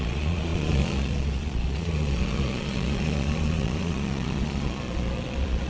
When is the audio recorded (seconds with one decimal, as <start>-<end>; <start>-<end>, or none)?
none